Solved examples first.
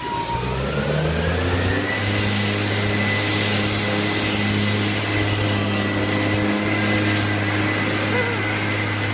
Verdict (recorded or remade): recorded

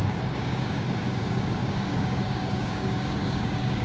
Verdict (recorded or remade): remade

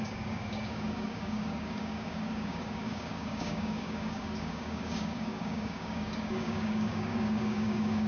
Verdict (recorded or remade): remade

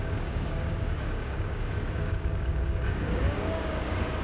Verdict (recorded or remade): remade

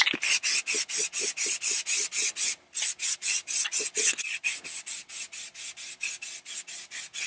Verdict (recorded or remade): recorded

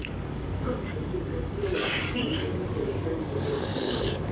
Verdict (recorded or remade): remade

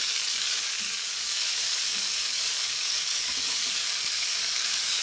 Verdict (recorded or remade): remade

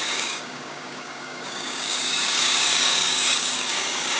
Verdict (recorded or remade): remade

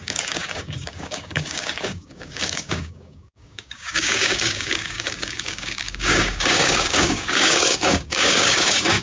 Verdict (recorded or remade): remade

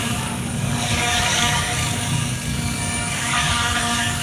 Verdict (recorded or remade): remade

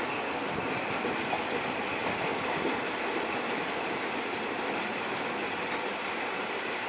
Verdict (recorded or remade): recorded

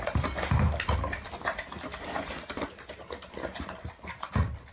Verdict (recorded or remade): recorded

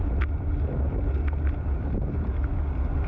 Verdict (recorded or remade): recorded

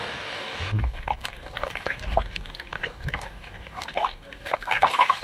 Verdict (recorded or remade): remade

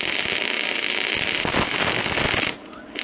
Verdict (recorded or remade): recorded